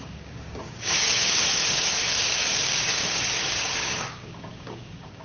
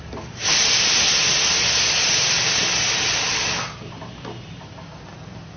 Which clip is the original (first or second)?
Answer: second